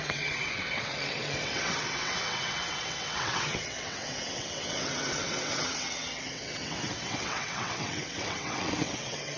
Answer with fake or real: fake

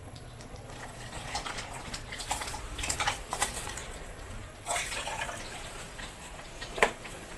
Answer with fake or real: fake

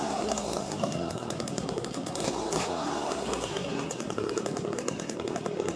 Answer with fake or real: fake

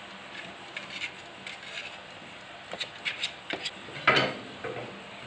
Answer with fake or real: real